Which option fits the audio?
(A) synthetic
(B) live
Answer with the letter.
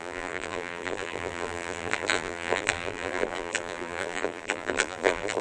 A